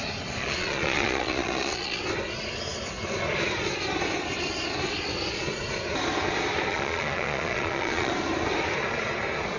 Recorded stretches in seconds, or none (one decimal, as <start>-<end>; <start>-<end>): 0.0-0.4; 2.0-6.7; 8.1-9.6